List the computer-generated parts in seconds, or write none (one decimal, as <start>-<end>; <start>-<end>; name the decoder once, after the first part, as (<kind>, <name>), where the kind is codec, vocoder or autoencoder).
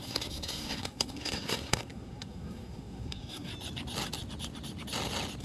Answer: 0.0-3.5 (codec, SNAC)